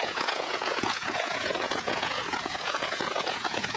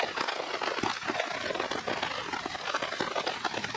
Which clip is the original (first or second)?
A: second